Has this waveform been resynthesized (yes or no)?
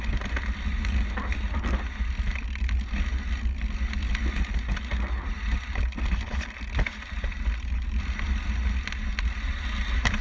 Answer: no